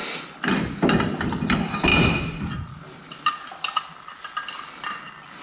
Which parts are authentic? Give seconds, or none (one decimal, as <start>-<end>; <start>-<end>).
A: 0.0-5.4